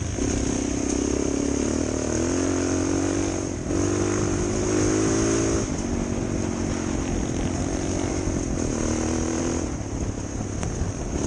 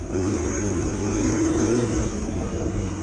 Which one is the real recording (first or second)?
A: first